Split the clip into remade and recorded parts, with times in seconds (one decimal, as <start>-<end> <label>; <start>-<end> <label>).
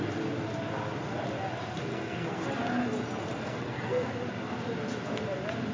0.0-1.9 recorded; 1.9-2.5 remade; 2.5-3.4 recorded; 3.4-4.1 remade; 4.1-5.7 recorded